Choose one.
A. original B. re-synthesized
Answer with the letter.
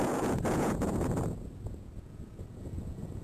B